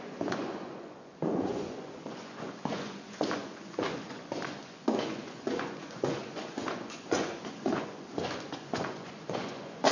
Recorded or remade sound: remade